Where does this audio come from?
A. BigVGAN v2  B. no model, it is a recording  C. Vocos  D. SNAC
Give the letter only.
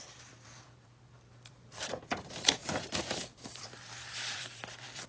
A